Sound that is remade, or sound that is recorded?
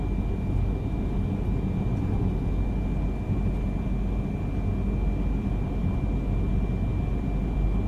recorded